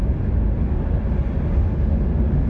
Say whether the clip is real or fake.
real